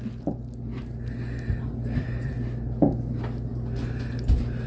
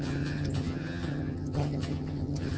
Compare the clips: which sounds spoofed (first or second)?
second